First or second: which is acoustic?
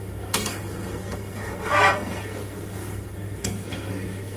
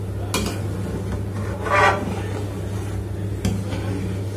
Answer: second